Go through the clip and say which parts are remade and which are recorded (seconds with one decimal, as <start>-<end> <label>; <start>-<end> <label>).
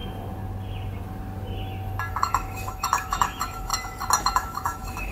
0.0-2.1 recorded; 2.1-3.7 remade; 3.7-4.2 recorded; 4.2-5.1 remade